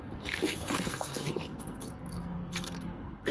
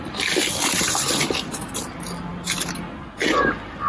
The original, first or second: second